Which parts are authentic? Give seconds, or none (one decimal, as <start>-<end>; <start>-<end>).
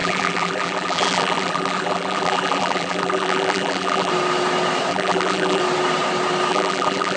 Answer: 4.1-4.9; 5.6-6.5